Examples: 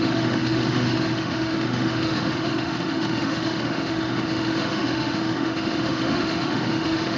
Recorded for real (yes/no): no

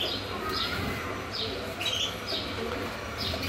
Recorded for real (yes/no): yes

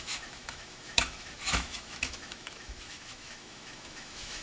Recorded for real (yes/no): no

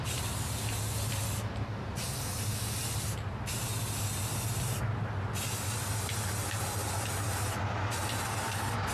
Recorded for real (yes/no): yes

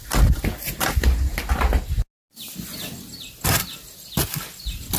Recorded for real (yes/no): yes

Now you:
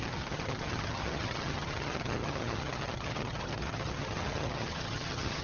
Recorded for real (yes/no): no